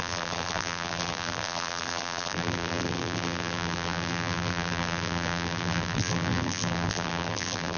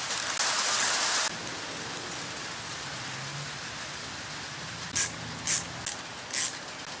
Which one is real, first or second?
second